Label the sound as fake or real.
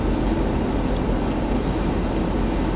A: real